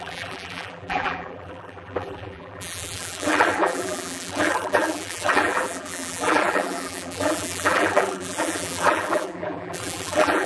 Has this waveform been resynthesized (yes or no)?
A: yes